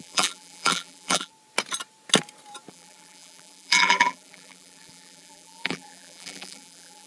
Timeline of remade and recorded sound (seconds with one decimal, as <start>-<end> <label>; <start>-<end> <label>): 0.0-1.3 remade; 1.3-2.7 recorded; 2.7-7.1 remade